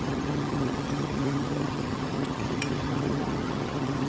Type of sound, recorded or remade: remade